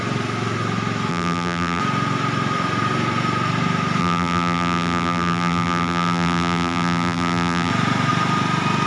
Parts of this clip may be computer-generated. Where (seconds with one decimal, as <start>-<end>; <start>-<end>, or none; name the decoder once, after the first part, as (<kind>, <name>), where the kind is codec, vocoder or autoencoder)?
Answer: 1.1-1.8 (vocoder, BigVGAN v2); 4.0-7.7